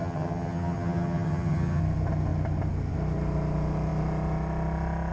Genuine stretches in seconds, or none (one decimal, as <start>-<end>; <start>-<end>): 1.8-5.1